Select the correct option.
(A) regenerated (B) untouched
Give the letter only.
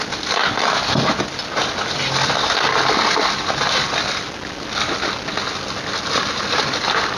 B